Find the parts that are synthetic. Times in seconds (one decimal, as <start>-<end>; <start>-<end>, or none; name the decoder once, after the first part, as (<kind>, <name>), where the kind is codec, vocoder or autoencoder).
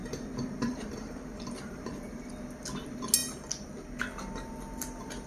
0.0-2.3 (vocoder, BigVGAN v2)